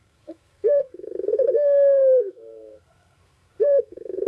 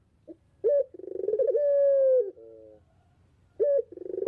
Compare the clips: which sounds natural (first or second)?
second